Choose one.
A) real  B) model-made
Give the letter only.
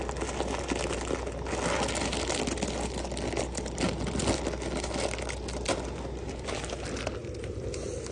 A